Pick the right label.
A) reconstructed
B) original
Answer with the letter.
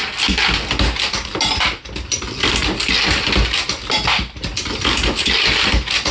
B